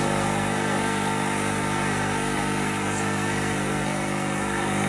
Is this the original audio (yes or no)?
no